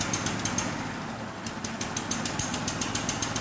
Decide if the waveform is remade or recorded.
recorded